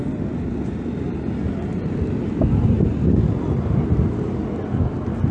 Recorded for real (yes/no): yes